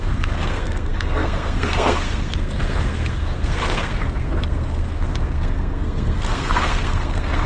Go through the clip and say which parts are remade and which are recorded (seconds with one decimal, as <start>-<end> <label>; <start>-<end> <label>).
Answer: 0.0-7.5 remade